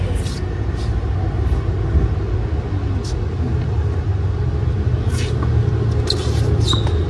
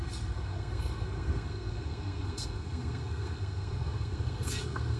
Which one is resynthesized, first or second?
second